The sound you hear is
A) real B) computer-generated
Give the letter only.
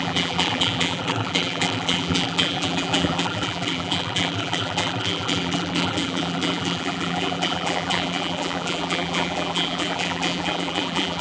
B